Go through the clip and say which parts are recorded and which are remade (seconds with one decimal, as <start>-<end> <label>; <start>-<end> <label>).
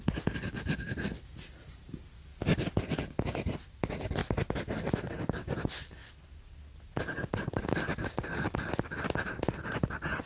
0.0-2.3 remade; 2.3-3.0 recorded; 3.0-6.0 remade; 6.0-7.0 recorded; 7.0-10.3 remade